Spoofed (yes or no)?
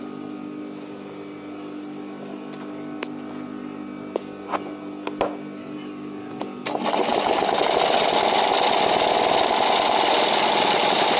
no